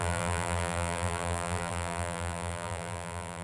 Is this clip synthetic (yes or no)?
yes